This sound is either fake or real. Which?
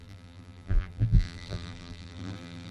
fake